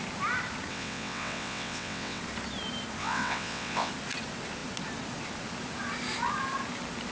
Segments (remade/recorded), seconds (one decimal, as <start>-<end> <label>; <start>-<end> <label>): 0.0-0.7 recorded; 0.7-2.2 remade; 2.2-3.0 recorded; 3.0-3.9 remade; 3.9-7.1 recorded